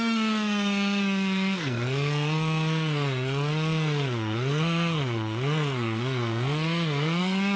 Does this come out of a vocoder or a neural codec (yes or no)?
yes